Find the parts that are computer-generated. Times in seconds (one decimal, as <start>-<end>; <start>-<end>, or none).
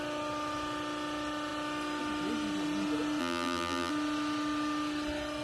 3.2-3.9